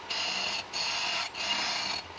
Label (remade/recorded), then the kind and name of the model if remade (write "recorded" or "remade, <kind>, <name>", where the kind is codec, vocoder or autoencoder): recorded